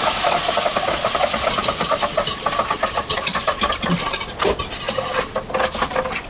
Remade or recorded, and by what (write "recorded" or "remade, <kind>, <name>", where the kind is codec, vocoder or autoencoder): remade, vocoder, BigVGAN v2